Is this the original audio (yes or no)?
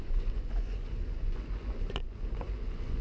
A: no